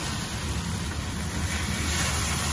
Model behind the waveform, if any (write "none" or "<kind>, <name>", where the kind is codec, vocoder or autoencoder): none